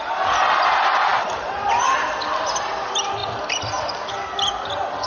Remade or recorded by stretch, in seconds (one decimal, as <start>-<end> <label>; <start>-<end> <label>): 0.0-5.1 recorded